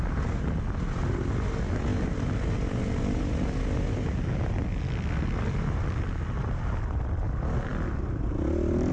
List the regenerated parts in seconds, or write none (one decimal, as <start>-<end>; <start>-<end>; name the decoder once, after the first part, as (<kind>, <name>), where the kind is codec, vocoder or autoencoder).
none